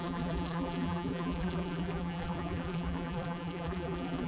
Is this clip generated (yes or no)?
yes